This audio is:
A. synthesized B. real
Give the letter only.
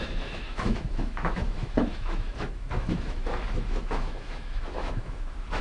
A